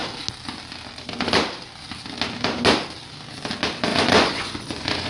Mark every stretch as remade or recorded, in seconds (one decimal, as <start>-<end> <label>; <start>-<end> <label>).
0.0-3.9 recorded; 3.9-5.1 remade